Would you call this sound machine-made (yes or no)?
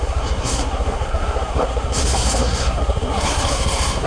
yes